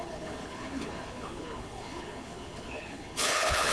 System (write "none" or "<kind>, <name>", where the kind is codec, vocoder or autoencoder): codec, HILCodec